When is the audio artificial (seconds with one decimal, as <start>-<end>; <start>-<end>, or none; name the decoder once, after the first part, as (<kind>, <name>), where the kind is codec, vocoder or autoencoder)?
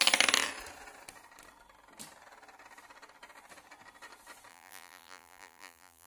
4.5-6.1 (vocoder, BigVGAN v2)